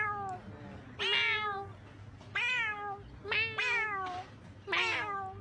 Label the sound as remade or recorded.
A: recorded